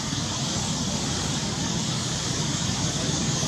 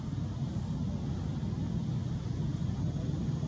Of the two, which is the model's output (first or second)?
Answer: first